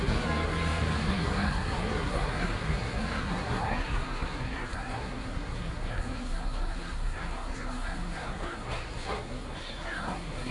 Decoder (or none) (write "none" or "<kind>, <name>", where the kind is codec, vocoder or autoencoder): codec, SNAC